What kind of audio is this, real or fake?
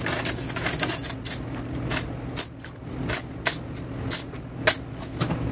real